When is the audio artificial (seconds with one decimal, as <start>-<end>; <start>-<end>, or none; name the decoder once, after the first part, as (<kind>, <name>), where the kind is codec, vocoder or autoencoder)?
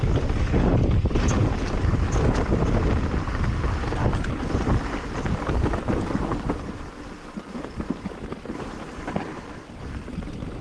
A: 9.3-9.9 (vocoder, BigVGAN v2)